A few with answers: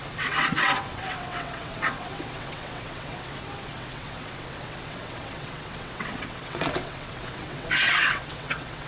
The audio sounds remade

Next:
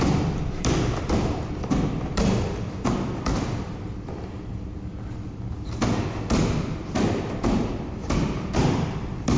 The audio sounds remade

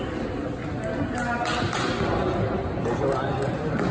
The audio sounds recorded